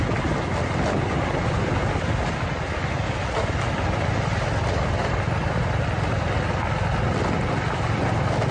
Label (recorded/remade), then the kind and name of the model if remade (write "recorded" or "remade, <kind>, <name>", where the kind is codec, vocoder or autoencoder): recorded